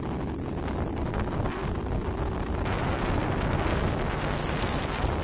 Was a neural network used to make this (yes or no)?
no